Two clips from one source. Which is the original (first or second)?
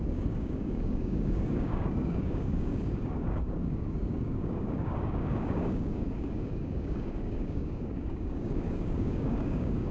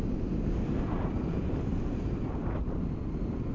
second